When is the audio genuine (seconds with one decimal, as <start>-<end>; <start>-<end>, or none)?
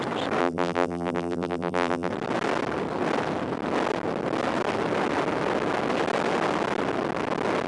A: 0.0-0.4; 2.1-7.7